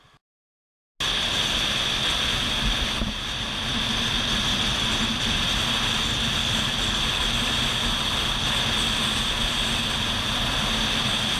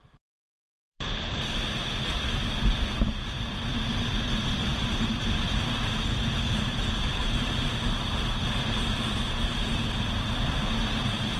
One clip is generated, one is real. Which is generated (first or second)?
second